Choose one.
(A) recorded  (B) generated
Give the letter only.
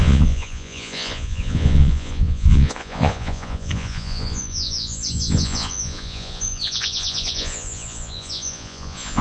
B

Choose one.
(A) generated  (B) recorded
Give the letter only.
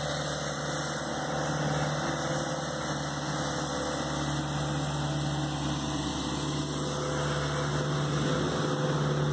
B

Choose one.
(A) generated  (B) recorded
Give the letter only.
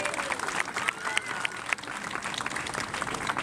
B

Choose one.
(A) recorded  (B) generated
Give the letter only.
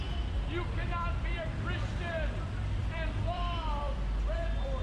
B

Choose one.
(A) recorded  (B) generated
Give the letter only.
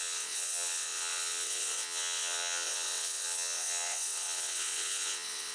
B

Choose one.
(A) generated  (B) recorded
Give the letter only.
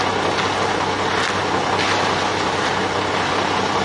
B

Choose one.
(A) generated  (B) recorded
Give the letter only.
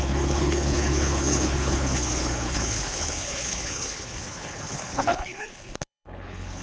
A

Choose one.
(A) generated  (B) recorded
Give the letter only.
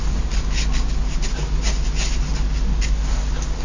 B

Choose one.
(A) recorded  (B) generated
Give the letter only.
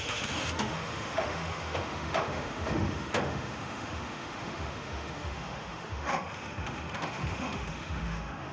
B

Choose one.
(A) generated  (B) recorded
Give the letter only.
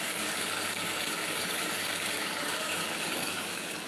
A